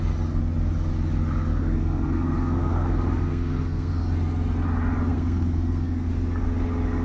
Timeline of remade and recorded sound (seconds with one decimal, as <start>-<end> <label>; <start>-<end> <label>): 0.0-1.5 recorded; 1.5-3.9 remade; 3.9-5.1 recorded; 5.1-6.1 remade; 6.1-7.0 recorded